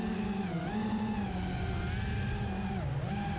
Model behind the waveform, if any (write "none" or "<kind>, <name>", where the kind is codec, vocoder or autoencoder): none